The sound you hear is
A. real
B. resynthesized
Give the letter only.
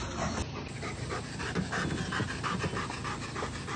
A